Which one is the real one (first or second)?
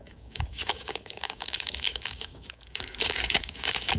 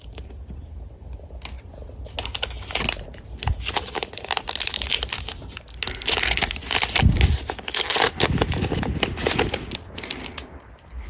second